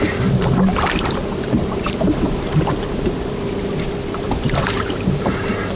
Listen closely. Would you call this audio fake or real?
fake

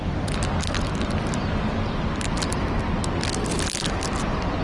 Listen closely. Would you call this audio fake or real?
real